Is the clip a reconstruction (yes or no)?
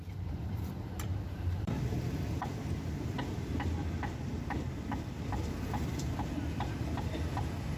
yes